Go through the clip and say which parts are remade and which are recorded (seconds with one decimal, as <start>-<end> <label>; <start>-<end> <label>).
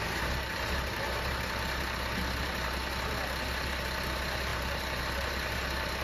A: 0.0-2.8 remade; 2.8-3.5 recorded; 3.5-6.0 remade